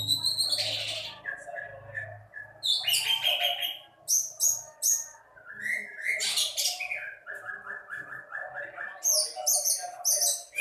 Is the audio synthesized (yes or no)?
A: no